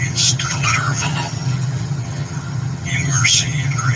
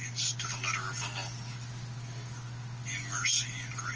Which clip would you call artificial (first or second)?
first